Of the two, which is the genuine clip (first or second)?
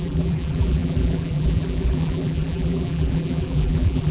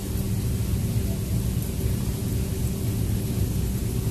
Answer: second